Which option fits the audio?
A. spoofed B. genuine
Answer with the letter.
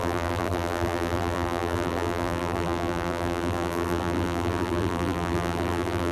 A